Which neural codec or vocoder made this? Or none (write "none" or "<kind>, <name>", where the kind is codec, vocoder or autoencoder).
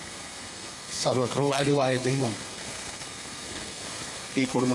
codec, SNAC